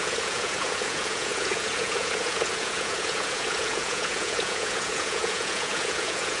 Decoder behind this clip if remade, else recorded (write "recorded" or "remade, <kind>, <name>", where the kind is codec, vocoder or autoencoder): remade, vocoder, Vocos